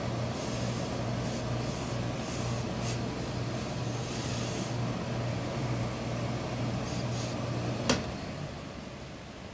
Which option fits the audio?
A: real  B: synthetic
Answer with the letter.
A